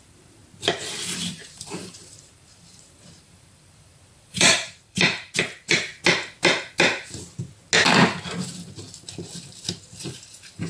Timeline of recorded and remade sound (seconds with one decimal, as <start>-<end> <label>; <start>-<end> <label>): 0.0-0.4 remade; 0.4-1.2 recorded; 1.2-5.9 remade; 5.9-9.8 recorded; 9.8-10.7 remade